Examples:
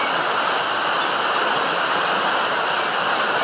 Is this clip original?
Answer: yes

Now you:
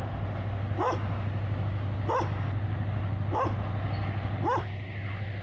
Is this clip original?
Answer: yes